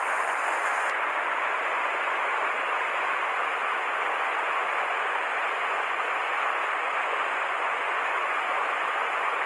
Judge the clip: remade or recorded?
remade